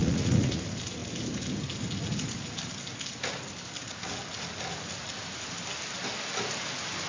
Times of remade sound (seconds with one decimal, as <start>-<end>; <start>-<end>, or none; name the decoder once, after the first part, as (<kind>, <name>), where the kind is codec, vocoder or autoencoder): 0.0-0.6 (vocoder, Vocos)